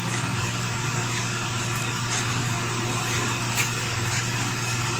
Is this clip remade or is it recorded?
remade